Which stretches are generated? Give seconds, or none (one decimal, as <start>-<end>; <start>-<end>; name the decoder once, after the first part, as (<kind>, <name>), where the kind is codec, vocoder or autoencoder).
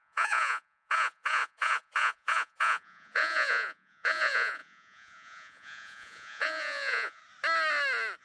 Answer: 0.0-7.2 (vocoder, Vocos)